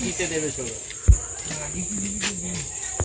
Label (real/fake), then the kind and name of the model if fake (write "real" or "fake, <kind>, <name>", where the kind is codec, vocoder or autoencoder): real